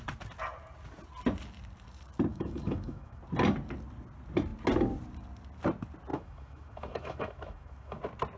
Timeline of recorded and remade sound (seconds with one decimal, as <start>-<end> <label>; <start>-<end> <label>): 0.0-2.3 recorded; 2.3-3.2 remade; 3.2-6.1 recorded; 6.1-8.0 remade; 8.0-8.4 recorded